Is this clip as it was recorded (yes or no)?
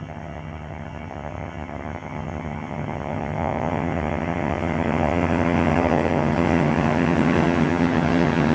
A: no